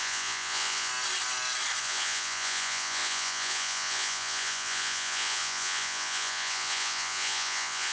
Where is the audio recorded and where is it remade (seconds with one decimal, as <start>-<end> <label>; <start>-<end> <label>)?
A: 0.0-0.9 remade; 0.9-1.8 recorded; 1.8-7.9 remade